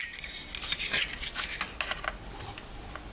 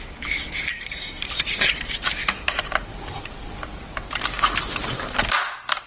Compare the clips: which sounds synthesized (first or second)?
second